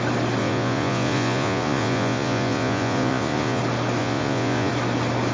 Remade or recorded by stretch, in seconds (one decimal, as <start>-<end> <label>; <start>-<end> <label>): 0.0-0.4 recorded; 0.4-3.6 remade; 3.6-4.0 recorded; 4.0-4.7 remade; 4.7-5.3 recorded